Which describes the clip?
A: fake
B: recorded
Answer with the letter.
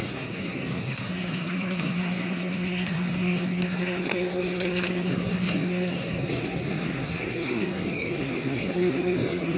A